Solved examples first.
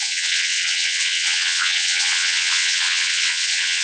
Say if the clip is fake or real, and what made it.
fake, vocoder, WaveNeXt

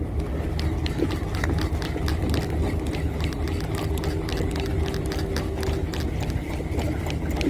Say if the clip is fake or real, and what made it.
real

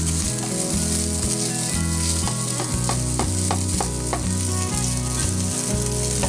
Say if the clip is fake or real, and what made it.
real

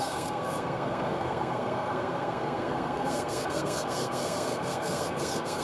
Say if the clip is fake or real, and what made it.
fake, codec, SNAC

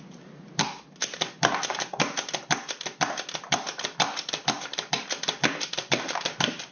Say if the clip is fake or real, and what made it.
fake, vocoder, BigVGAN v2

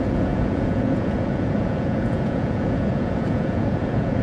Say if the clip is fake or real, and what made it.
fake, vocoder, Vocos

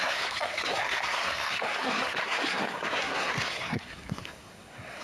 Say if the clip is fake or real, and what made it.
fake, codec, SNAC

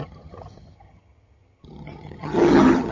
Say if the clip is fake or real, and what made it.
fake, vocoder, HiFi-GAN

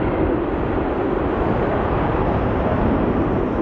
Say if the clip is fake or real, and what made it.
real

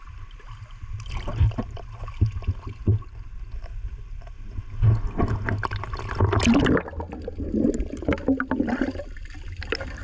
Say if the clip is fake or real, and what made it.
real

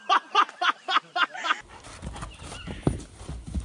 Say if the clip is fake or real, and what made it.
real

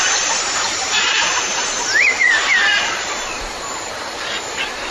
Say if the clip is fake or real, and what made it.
fake, vocoder, BigVGAN v2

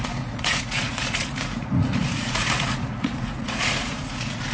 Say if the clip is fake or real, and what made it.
fake, vocoder, Vocos